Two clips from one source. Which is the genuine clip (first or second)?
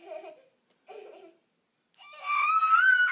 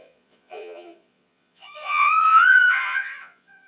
first